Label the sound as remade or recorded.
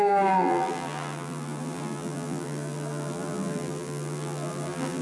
remade